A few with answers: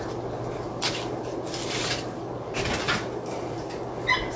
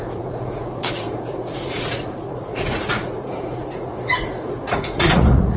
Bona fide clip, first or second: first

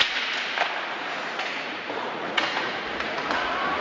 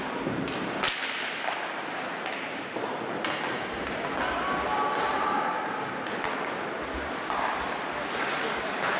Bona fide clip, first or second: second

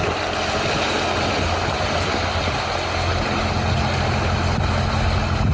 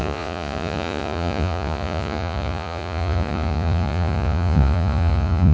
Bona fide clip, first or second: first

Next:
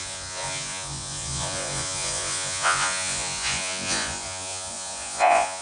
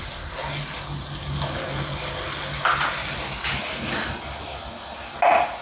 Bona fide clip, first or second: second